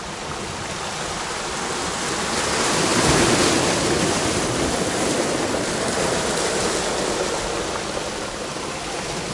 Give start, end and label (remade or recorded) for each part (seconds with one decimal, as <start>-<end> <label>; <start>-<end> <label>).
0.0-9.3 recorded